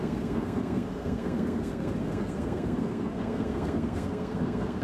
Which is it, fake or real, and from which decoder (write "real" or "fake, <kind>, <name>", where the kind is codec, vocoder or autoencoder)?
fake, codec, SNAC